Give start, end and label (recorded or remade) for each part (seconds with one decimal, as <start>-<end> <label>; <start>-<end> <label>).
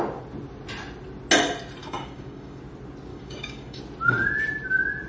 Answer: 0.0-1.8 recorded; 1.8-2.6 remade; 2.6-3.1 recorded; 3.1-3.8 remade; 3.8-5.1 recorded